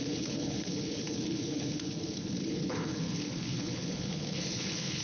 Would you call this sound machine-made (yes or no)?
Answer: yes